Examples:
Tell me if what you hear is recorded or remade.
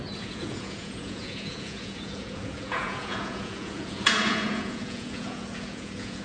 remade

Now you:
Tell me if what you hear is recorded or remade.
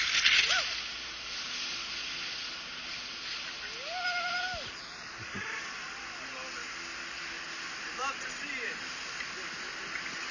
recorded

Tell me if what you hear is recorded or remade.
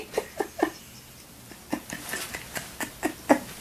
recorded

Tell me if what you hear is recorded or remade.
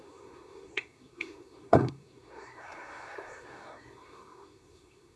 remade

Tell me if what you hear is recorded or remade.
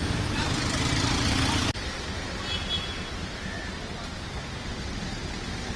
recorded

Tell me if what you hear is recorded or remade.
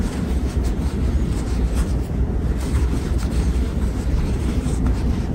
recorded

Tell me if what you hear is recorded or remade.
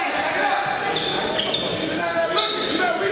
recorded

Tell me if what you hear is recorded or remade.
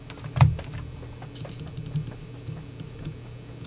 recorded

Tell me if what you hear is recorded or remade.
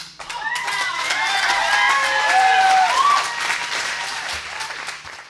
recorded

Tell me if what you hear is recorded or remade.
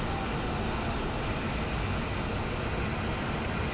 recorded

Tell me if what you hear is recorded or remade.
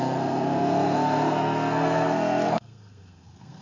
remade